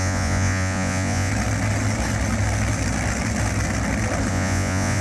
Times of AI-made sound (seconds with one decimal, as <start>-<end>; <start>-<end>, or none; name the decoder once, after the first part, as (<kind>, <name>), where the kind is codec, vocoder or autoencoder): 0.0-1.3 (vocoder, Vocos); 4.3-5.0

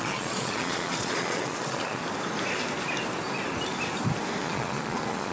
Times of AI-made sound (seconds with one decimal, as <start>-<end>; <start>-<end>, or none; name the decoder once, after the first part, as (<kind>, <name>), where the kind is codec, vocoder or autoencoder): 0.0-2.0 (vocoder, Vocos); 4.4-5.3

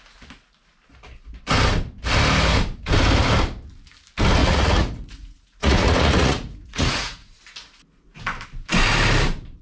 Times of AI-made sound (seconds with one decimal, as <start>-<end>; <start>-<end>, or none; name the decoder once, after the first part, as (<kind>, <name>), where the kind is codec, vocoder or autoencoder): 4.4-7.4 (vocoder, Vocos)

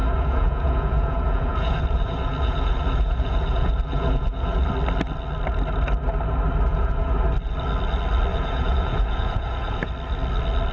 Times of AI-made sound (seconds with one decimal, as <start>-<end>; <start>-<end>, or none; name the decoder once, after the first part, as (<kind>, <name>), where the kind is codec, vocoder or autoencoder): 0.0-4.7 (vocoder, Vocos); 6.7-7.2; 8.3-9.9

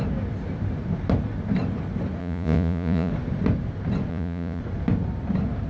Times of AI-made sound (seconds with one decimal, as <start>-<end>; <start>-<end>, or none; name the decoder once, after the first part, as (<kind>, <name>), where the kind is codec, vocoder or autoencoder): 2.2-3.1 (vocoder, Vocos); 4.1-4.6

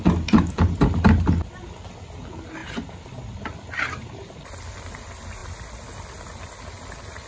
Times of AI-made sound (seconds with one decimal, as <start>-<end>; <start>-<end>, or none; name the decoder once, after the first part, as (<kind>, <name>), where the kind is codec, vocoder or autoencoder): none